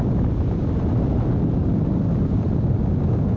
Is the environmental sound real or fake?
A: real